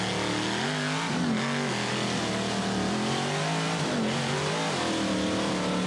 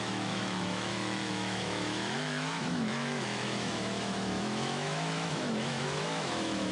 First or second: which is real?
first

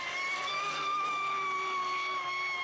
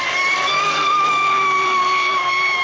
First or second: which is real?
first